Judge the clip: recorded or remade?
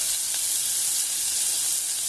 recorded